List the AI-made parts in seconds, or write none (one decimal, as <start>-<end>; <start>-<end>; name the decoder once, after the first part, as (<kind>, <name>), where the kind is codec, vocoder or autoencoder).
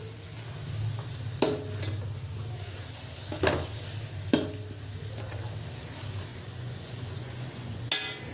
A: 6.3-7.8 (vocoder, Vocos)